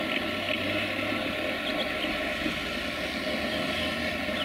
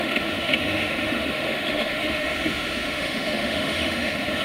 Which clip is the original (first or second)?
first